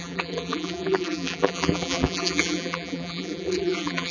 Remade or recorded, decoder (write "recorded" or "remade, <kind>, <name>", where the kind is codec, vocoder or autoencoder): remade, vocoder, BigVGAN v2